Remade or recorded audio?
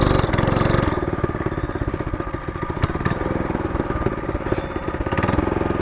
recorded